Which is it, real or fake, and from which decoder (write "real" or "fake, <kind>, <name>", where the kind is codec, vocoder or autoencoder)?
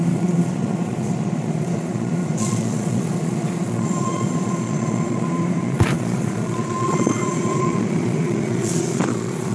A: fake, vocoder, Vocos